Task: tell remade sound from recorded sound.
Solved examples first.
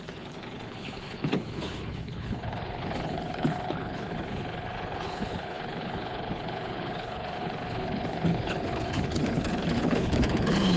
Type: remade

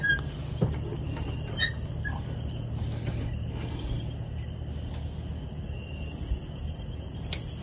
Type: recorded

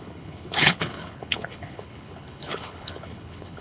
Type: remade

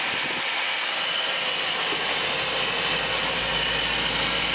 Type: recorded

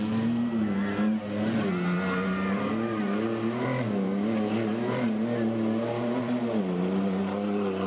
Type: recorded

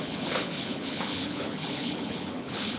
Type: remade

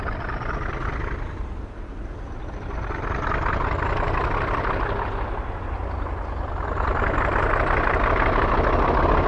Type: recorded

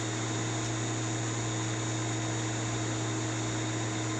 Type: recorded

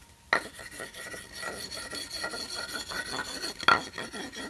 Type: recorded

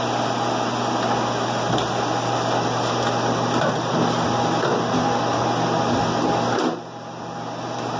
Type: recorded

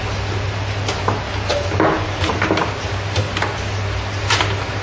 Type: recorded